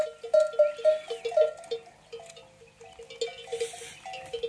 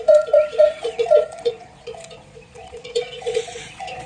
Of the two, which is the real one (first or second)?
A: first